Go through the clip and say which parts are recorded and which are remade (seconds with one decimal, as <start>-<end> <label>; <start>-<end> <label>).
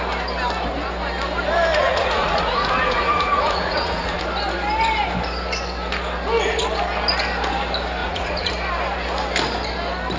0.0-1.7 recorded; 1.7-4.2 remade; 4.2-8.0 recorded; 8.0-8.5 remade; 8.5-10.2 recorded